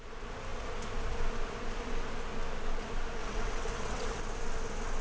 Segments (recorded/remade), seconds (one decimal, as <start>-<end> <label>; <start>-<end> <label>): 0.0-3.2 recorded; 3.2-4.2 remade; 4.2-5.0 recorded